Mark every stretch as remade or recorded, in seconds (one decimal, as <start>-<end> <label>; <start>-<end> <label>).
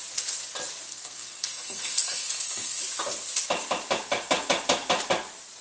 0.0-0.9 recorded; 0.9-2.8 remade; 2.8-5.6 recorded